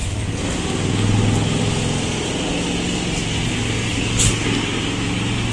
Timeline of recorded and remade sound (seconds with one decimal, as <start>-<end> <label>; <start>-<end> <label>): 0.0-5.5 recorded